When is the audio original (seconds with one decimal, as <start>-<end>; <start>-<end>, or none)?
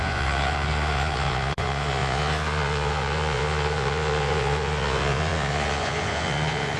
none